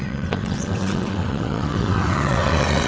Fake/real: fake